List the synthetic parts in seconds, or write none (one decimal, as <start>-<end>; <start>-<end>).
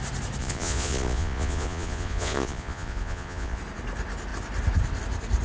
0.4-3.6